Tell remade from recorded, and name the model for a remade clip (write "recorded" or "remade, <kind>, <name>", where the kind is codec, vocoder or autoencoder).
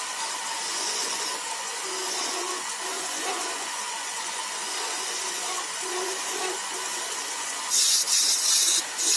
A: remade, vocoder, Vocos